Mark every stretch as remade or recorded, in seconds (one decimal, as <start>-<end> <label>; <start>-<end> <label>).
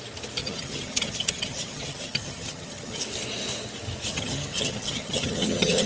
0.0-0.4 recorded; 0.4-3.0 remade; 3.0-4.1 recorded; 4.1-5.9 remade